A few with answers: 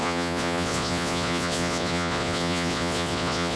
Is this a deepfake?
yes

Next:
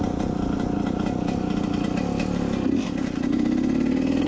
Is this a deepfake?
no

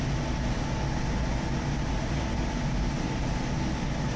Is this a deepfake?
no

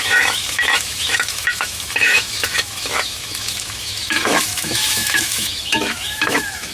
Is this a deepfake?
yes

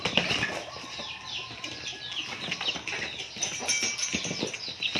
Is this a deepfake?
no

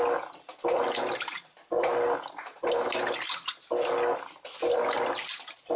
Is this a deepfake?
no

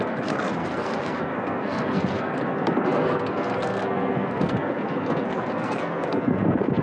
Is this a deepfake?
yes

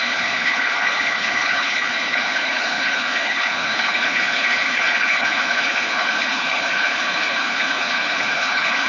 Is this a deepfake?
yes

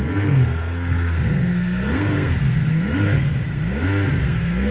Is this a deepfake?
yes